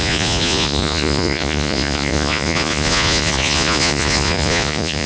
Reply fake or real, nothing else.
fake